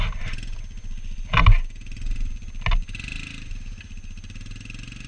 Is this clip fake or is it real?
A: real